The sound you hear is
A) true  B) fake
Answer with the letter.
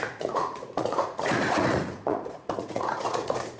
B